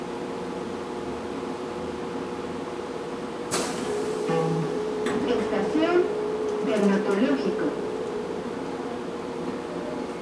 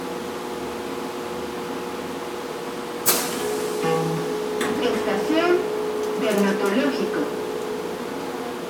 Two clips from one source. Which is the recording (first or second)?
second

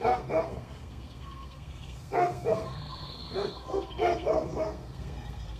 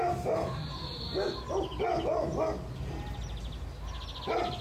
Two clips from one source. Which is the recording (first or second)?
second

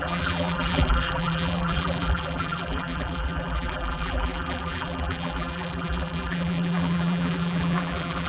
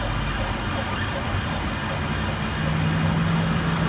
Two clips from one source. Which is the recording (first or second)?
second